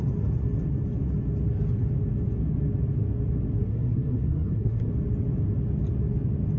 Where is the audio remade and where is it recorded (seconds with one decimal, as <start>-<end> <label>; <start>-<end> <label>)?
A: 0.0-3.6 recorded; 3.6-4.9 remade; 4.9-6.6 recorded